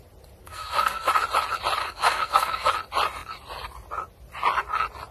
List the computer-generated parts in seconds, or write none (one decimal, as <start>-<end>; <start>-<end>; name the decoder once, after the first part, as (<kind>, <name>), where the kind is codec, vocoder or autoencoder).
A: 0.4-1.1 (codec, SNAC); 1.8-2.7